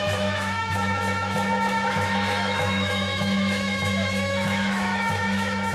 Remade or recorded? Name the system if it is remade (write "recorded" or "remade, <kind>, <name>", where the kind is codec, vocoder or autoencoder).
remade, autoencoder, DAC-VAE